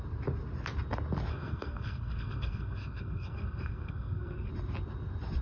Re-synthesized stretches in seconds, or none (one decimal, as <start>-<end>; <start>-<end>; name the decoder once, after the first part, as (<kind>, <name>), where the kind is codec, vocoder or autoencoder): 1.3-4.5 (codec, SNAC)